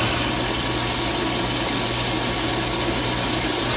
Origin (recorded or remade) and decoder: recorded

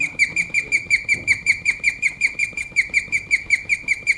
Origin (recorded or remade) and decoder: recorded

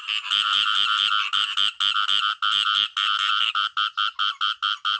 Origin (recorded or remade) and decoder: recorded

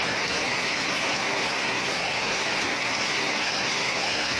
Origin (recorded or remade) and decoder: remade, codec, SNAC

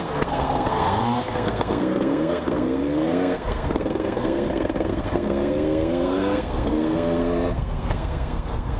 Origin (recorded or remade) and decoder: remade, codec, SNAC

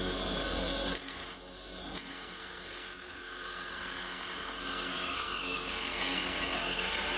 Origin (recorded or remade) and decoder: remade, codec, SNAC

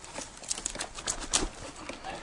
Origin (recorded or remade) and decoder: recorded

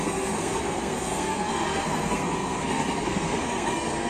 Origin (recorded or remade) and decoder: remade, codec, SNAC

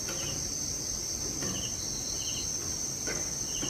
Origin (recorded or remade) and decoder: recorded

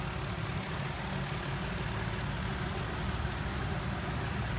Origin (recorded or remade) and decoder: recorded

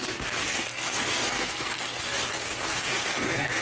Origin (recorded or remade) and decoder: remade, codec, SNAC